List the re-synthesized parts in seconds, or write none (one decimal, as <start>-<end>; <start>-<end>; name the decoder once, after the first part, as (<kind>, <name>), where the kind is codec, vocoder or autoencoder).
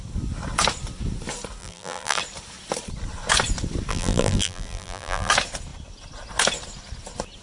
1.6-2.2 (vocoder, BigVGAN v2); 3.9-5.3